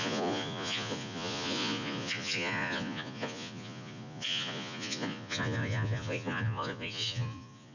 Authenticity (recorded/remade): remade